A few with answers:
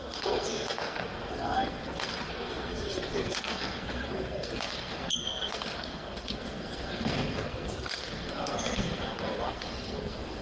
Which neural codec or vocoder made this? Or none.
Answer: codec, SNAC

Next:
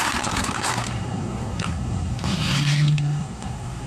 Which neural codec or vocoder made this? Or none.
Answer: codec, SNAC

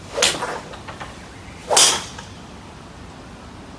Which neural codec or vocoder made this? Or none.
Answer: none